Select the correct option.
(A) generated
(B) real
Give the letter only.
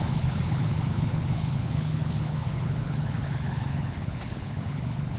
A